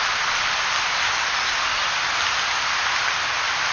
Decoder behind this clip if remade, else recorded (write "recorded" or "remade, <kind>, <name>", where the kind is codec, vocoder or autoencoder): recorded